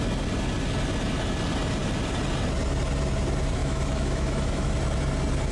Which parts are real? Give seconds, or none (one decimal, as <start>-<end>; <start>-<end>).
0.0-3.6; 4.7-5.5